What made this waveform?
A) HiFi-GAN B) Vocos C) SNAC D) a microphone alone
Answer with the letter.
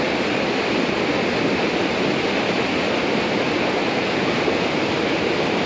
D